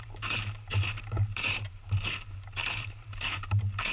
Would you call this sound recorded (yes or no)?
no